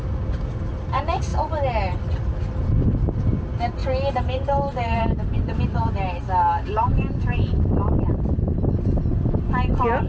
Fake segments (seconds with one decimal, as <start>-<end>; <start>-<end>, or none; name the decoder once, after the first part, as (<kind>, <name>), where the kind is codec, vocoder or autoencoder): none